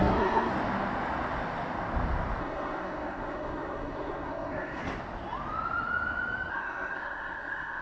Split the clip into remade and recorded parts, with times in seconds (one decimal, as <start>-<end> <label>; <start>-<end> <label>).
0.0-0.5 remade; 0.5-2.4 recorded; 2.4-4.8 remade; 4.8-6.5 recorded; 6.5-7.8 remade